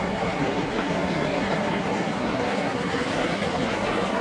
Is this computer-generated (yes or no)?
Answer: yes